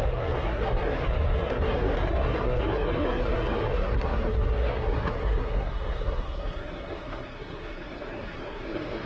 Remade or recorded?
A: remade